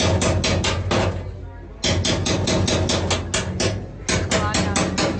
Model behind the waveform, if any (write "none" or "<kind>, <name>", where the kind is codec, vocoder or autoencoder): none